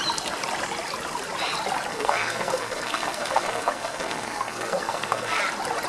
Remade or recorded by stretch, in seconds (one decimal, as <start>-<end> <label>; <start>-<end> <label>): 0.0-1.9 recorded; 1.9-5.4 remade; 5.4-5.9 recorded